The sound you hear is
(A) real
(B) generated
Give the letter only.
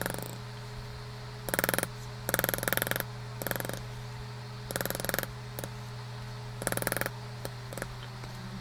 A